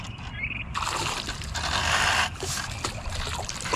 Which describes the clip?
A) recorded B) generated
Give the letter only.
A